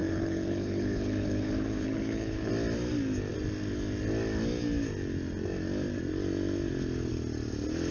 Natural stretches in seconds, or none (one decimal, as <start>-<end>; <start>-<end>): 2.5-7.9